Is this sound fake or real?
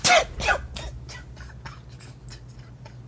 real